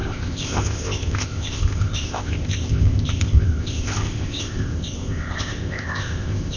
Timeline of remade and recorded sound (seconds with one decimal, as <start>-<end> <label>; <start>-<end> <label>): 0.0-6.6 remade